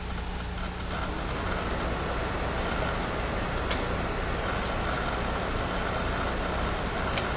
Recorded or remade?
recorded